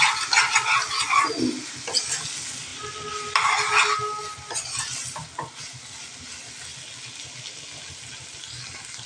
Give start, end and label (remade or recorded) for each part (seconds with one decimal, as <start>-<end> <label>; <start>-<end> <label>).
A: 0.0-9.1 recorded